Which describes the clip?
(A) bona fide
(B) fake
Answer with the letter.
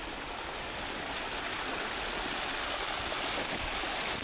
A